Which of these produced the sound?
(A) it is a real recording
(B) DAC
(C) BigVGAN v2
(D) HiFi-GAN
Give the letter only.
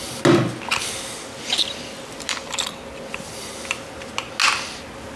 A